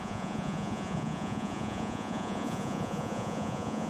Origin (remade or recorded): remade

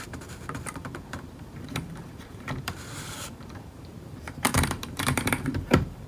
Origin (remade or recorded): remade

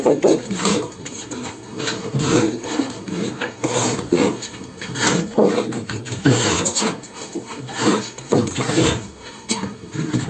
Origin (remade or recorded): remade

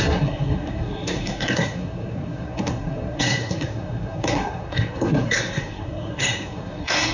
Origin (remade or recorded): remade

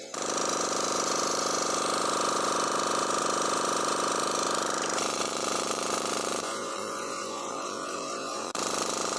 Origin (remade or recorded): remade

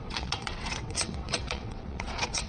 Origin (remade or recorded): remade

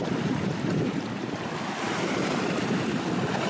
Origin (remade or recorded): recorded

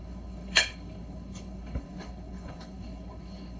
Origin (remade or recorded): remade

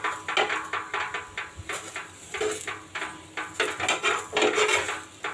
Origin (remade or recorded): recorded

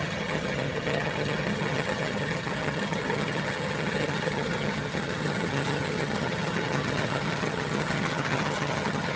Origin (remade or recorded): remade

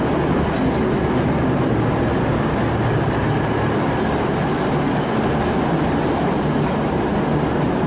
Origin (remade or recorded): recorded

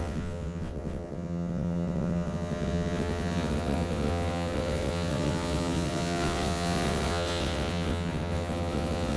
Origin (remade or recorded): remade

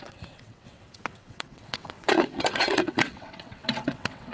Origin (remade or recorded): remade